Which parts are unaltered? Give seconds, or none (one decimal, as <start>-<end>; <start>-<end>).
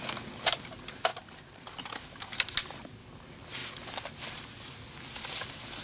0.0-5.8